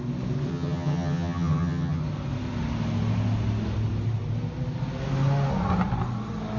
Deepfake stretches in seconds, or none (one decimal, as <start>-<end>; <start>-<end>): 0.5-2.0